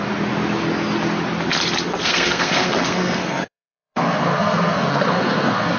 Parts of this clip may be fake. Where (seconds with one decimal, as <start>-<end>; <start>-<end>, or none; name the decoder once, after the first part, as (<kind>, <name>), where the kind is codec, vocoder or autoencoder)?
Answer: 1.9-5.8 (codec, SNAC)